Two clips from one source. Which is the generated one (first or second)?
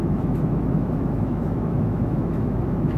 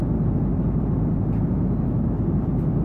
first